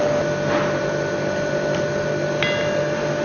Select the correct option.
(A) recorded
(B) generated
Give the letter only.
A